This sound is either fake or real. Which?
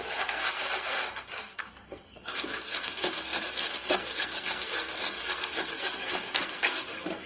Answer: fake